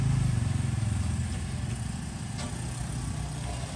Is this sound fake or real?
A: real